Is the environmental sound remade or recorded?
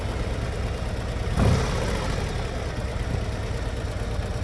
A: recorded